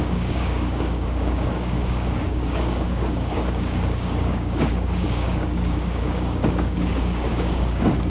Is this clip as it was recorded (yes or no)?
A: no